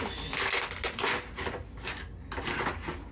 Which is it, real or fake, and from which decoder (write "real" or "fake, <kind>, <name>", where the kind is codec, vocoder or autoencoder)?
real